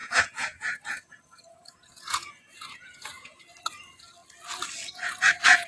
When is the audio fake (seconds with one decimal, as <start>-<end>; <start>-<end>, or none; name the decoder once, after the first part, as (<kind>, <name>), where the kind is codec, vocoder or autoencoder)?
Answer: 0.0-3.4 (vocoder, Vocos)